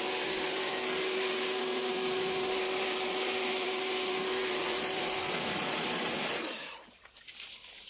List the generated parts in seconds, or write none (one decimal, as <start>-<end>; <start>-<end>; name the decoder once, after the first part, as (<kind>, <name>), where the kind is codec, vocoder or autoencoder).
none